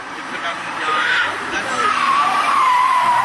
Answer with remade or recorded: remade